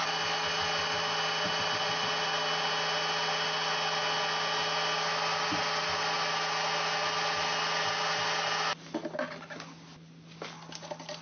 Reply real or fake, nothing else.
real